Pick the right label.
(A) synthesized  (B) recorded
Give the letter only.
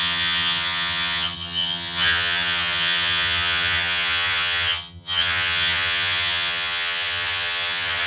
A